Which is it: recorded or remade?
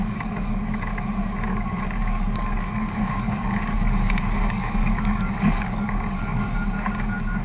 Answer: remade